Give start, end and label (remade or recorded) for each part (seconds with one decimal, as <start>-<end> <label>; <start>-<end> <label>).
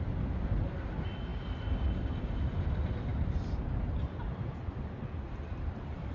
0.0-6.1 recorded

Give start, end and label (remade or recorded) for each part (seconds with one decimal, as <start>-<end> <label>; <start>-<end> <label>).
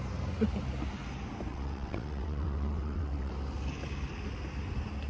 0.0-1.5 recorded; 1.5-3.3 remade; 3.3-5.1 recorded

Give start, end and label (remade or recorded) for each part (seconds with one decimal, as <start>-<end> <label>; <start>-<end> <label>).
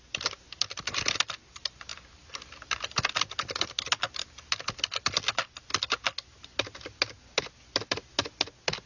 0.0-8.9 recorded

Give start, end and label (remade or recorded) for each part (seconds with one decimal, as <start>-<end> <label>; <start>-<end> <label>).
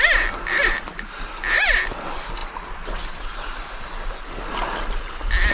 0.0-5.5 recorded